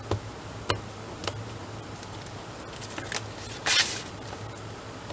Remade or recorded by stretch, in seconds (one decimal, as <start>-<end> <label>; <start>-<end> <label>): 0.0-5.1 recorded